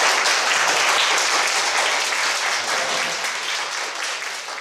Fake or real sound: real